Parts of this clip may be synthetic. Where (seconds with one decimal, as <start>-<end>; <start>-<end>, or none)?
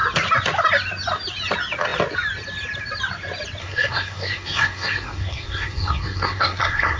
3.6-7.0